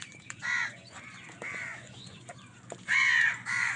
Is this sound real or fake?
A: fake